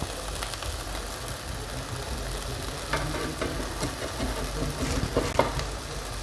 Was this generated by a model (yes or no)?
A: no